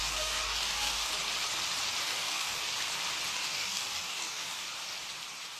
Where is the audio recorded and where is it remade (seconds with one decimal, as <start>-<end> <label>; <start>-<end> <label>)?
0.0-1.1 remade; 1.1-2.0 recorded; 2.0-2.6 remade; 2.6-3.3 recorded; 3.3-4.7 remade; 4.7-5.6 recorded